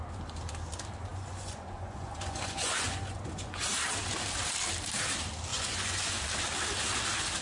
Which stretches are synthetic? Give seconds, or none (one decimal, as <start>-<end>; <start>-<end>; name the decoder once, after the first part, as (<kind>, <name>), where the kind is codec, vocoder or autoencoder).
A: 1.1-3.6 (vocoder, Vocos); 5.5-6.2

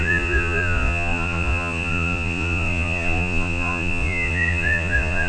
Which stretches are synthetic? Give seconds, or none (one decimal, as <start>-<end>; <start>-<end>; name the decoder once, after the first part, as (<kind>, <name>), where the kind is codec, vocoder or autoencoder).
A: 0.0-5.3 (vocoder, Vocos)

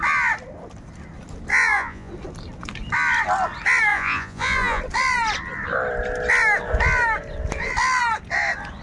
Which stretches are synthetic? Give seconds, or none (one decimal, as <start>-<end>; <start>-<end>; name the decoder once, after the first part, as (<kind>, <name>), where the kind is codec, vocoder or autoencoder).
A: 1.5-2.1 (vocoder, Vocos); 3.9-4.8